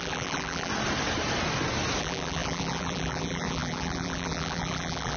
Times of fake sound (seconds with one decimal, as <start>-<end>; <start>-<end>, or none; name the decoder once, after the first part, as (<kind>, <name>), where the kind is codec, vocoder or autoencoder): 0.0-0.7 (vocoder, BigVGAN v2); 2.0-5.2